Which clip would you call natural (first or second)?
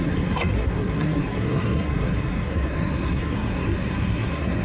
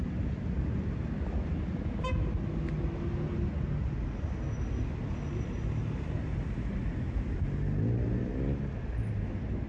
second